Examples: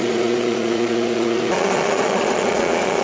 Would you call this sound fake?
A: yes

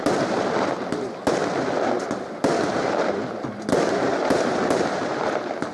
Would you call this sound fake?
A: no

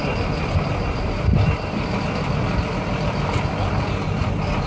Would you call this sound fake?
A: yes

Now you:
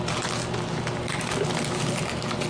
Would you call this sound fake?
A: no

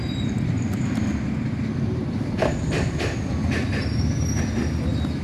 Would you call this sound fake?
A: no